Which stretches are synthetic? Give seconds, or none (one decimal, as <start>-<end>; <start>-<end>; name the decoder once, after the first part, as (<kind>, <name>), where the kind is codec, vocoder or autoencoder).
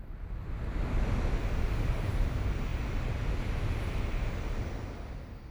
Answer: none